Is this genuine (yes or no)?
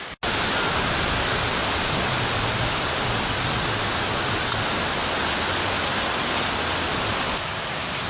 yes